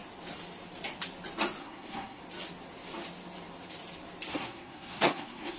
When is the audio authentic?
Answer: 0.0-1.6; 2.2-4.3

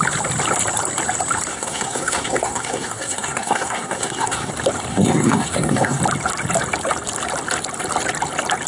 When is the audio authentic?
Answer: 0.0-1.5; 4.5-4.9; 6.0-8.7

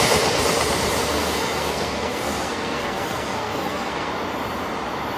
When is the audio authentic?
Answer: 0.0-1.0; 4.1-5.2